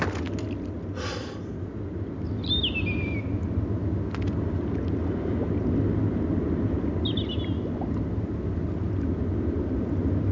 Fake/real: real